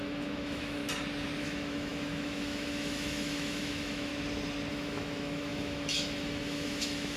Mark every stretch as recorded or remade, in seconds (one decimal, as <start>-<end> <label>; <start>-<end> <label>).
0.0-0.8 remade; 0.8-1.4 recorded; 1.4-4.1 remade; 4.1-4.7 recorded; 4.7-7.2 remade